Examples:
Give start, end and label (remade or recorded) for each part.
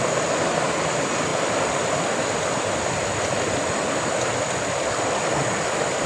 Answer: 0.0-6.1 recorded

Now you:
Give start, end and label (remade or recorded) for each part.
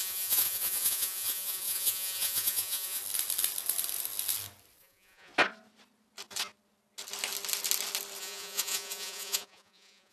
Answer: 0.0-3.0 remade; 3.0-4.8 recorded; 4.8-5.3 remade; 5.3-8.2 recorded; 8.2-10.1 remade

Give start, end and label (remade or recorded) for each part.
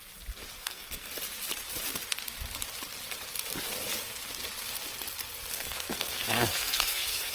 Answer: 0.0-0.6 recorded; 0.6-1.1 remade; 1.1-5.5 recorded; 5.5-7.3 remade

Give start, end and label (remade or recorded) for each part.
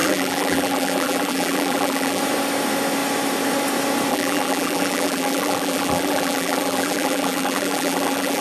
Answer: 0.0-2.2 remade; 2.2-4.1 recorded; 4.1-8.4 remade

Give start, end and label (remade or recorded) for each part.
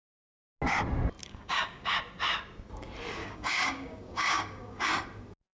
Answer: 0.0-1.2 recorded; 1.2-2.0 remade; 2.0-3.2 recorded; 3.2-4.9 remade; 4.9-5.5 recorded